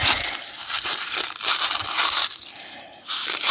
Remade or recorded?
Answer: remade